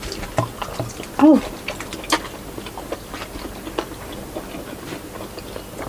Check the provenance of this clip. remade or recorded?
recorded